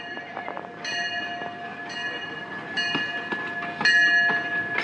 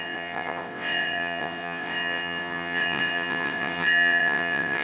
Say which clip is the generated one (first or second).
second